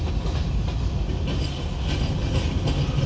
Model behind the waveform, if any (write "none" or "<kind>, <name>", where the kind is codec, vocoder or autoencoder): none